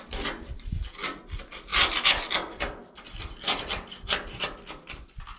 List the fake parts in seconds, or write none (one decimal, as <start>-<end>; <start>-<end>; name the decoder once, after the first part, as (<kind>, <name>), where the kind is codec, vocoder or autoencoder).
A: none